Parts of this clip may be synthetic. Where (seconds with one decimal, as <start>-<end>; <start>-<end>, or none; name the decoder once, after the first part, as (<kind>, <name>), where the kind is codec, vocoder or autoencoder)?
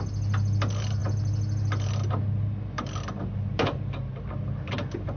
none